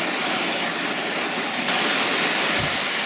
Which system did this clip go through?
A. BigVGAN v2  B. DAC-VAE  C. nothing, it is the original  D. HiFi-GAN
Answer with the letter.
C